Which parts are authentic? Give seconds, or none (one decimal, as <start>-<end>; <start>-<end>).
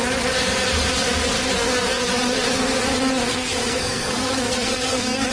0.0-3.3